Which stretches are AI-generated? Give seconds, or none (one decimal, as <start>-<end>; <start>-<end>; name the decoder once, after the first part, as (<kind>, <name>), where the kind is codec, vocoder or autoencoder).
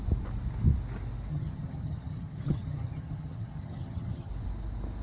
1.3-4.3 (vocoder, HiFi-GAN)